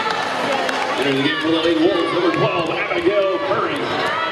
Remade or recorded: recorded